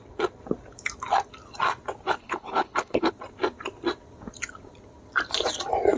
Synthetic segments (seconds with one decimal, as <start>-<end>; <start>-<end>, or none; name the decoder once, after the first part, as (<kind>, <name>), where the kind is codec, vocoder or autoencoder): 2.2-3.1 (codec, HILCodec)

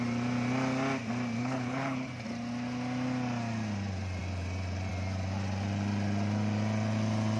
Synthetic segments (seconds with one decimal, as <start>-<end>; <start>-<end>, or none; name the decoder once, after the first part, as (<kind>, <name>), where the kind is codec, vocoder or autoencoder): 1.4-2.1 (codec, HILCodec)

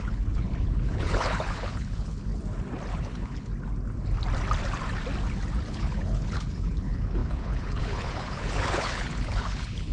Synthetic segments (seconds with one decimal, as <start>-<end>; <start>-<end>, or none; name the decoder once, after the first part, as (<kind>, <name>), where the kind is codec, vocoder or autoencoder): 0.0-2.3 (codec, HILCodec); 2.9-3.5; 5.7-9.9

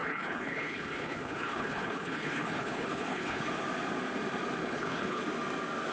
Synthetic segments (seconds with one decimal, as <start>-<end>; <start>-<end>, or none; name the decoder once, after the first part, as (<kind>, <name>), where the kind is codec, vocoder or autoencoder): 0.0-3.5 (codec, HILCodec); 4.6-5.2

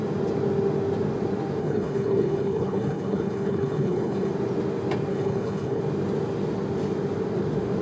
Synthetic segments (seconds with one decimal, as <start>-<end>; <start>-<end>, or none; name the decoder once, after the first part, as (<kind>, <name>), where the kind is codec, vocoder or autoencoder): 1.6-4.3 (codec, HILCodec); 5.1-5.8

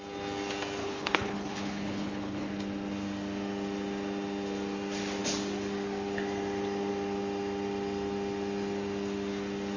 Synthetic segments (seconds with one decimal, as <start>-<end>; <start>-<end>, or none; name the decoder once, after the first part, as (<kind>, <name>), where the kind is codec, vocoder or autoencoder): 0.8-2.5 (codec, HILCodec)